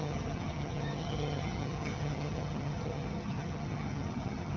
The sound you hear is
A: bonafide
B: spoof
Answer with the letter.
B